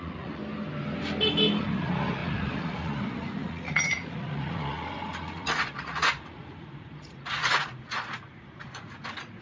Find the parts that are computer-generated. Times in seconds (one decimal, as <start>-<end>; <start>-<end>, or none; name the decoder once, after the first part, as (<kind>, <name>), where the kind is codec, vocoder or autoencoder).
0.0-0.4 (vocoder, Vocos); 1.6-9.4